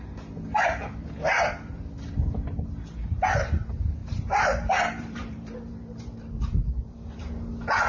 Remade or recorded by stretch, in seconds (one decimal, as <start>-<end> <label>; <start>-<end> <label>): 0.0-1.3 recorded; 1.3-1.8 remade; 1.8-4.0 recorded; 4.0-7.3 remade; 7.3-7.9 recorded